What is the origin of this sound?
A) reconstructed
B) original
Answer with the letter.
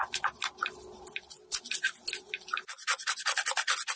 B